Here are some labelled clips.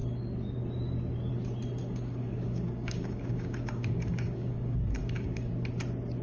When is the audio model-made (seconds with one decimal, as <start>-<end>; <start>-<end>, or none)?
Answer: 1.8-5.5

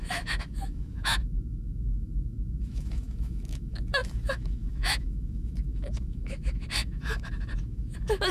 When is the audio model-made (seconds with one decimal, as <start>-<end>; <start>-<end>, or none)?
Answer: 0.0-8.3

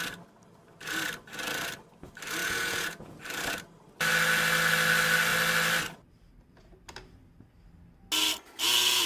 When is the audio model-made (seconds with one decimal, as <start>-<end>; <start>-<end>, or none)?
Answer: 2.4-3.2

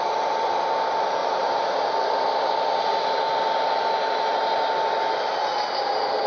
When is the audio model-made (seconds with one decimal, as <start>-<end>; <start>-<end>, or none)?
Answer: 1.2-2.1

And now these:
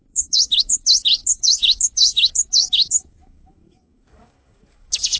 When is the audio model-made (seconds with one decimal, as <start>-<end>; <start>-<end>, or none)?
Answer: 0.0-5.2

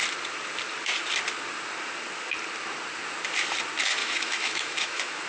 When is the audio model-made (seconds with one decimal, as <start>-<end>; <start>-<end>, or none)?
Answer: 4.0-5.3